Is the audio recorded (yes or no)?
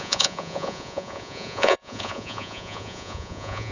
no